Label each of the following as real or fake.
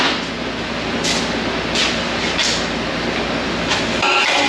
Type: real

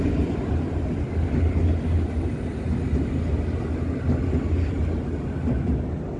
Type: real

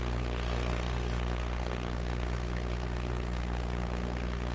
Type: fake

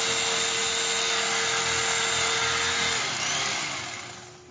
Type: real